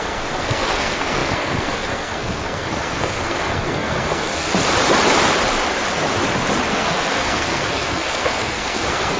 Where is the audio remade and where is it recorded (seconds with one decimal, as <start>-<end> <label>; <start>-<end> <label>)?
0.0-4.5 remade; 4.5-6.7 recorded; 6.7-9.2 remade